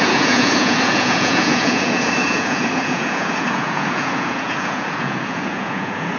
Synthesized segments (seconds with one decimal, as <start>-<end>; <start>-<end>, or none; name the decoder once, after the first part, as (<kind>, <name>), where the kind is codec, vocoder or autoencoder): 0.0-6.2 (vocoder, Vocos)